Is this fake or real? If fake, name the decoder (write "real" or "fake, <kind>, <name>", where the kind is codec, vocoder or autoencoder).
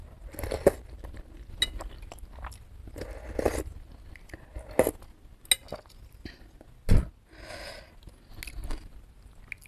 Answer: real